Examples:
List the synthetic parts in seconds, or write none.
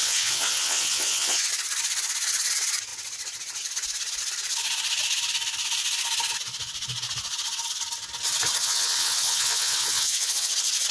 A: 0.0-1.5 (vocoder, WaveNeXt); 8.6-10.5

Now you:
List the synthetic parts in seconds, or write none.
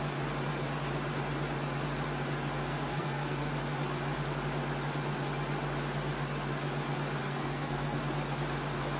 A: 2.7-3.5 (codec, SNAC); 7.2-8.0